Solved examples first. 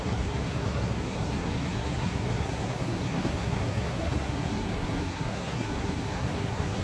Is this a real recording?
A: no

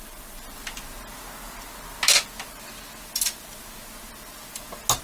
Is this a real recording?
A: yes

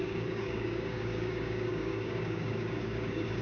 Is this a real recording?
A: no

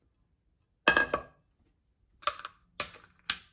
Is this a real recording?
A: yes